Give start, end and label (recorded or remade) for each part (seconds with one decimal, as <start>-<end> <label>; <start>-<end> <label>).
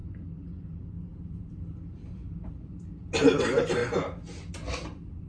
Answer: 0.0-1.1 recorded; 1.1-2.7 remade; 2.7-5.3 recorded